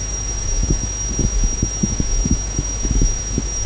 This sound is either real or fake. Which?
fake